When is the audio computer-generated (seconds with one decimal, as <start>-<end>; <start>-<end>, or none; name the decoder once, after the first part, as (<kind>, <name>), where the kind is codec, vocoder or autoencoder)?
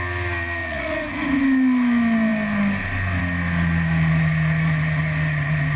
0.6-1.4 (vocoder, Vocos)